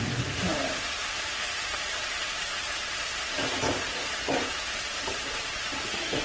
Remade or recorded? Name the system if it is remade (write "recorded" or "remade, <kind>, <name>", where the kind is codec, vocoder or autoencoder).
remade, vocoder, BigVGAN v2